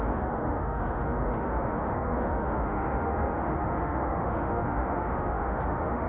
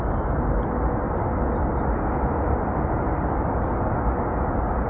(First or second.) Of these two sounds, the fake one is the first